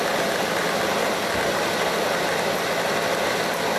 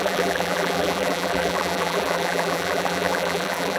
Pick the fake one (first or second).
second